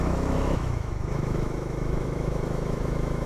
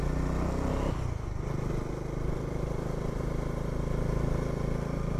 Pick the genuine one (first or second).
second